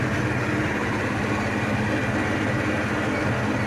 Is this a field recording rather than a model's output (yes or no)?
yes